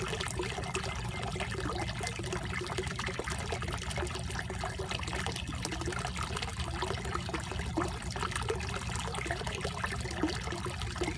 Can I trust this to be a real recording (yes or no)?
yes